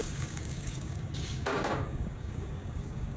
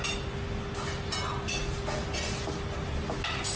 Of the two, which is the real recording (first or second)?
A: second